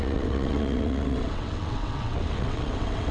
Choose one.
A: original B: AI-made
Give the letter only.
B